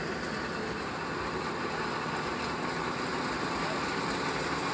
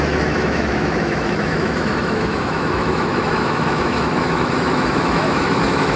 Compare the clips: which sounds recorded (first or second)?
first